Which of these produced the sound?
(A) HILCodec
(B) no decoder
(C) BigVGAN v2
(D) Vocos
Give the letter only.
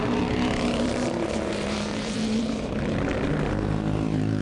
C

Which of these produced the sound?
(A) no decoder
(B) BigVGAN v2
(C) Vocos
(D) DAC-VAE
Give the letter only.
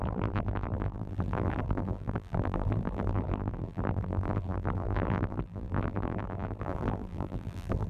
B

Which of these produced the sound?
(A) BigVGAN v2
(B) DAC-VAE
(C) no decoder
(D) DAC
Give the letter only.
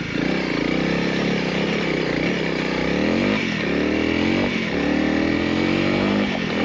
C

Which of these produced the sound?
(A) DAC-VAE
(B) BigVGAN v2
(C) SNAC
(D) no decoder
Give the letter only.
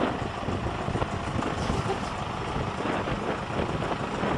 B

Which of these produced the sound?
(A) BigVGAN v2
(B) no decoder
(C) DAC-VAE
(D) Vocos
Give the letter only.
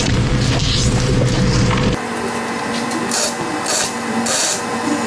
B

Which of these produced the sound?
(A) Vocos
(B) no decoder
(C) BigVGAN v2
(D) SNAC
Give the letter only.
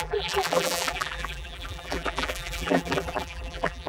C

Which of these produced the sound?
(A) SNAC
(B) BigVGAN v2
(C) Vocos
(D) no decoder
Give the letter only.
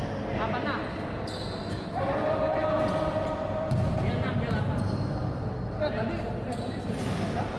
D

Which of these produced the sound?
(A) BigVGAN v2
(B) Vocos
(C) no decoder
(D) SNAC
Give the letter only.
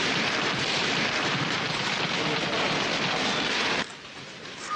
A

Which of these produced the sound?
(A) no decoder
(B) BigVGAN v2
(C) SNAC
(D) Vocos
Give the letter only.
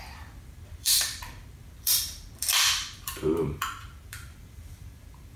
B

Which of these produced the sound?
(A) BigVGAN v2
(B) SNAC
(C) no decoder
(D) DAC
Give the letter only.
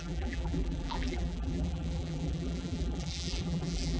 A